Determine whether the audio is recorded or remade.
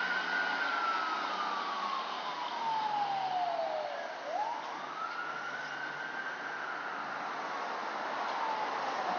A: recorded